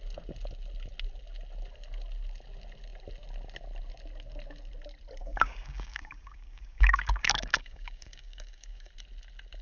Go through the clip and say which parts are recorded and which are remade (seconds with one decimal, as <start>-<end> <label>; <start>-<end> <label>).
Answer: 0.0-5.2 recorded; 5.2-8.9 remade; 8.9-9.6 recorded